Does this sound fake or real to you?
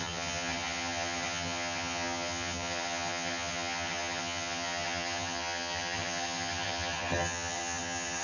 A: fake